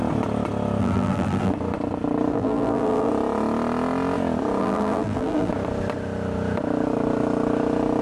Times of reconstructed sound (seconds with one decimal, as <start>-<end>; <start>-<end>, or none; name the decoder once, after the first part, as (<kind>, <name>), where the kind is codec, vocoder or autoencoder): 0.8-1.5 (vocoder, BigVGAN v2); 2.3-3.1; 4.6-5.5